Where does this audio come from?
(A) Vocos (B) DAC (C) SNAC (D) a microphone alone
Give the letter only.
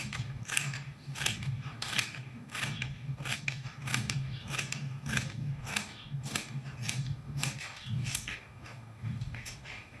B